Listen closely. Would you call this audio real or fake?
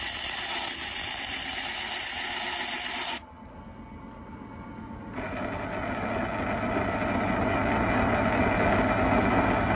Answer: real